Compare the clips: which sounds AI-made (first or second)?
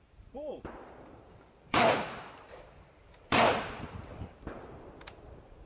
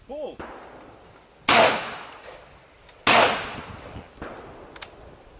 first